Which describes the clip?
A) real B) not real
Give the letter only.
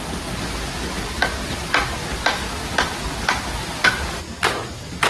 A